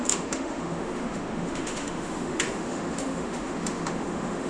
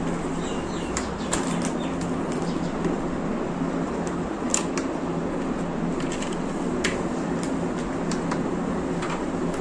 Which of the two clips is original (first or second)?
second